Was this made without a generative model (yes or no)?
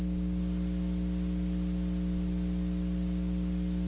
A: yes